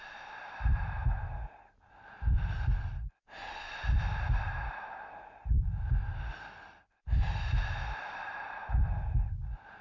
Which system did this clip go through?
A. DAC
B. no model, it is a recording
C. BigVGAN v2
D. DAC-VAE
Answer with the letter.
B